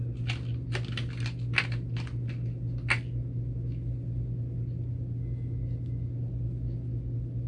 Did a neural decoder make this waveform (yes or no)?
no